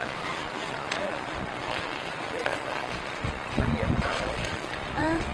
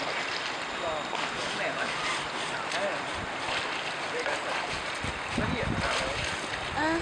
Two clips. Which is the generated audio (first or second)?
first